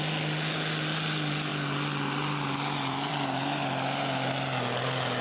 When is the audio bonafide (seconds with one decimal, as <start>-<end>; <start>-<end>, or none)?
0.0-5.2